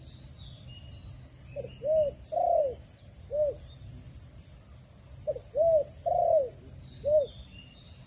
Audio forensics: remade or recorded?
recorded